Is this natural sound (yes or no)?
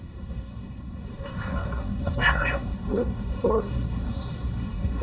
no